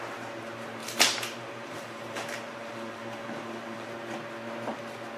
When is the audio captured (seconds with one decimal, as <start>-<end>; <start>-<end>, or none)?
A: 0.0-0.8; 3.9-5.2